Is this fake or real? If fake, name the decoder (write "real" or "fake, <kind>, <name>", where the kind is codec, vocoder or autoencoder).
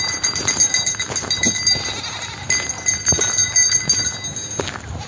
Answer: real